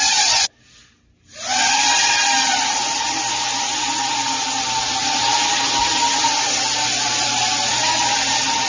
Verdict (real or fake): real